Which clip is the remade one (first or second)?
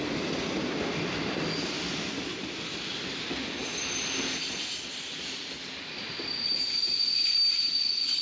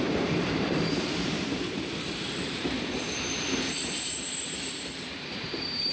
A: second